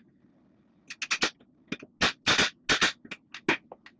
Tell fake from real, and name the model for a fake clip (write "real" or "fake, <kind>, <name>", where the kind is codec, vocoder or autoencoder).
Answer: real